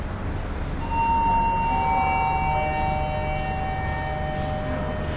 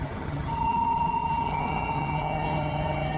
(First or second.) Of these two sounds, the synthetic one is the second